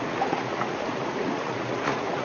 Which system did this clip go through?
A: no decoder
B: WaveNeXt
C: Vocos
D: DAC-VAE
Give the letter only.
C